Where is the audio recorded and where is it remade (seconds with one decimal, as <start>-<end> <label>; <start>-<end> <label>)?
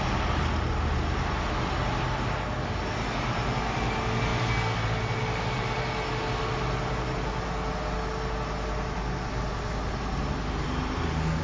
0.0-11.4 recorded